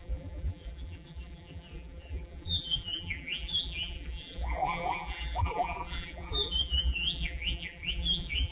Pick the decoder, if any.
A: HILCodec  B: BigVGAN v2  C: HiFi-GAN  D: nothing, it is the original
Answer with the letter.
B